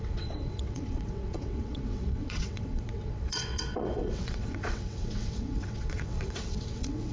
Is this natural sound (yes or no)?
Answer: no